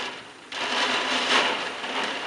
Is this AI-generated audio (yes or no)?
yes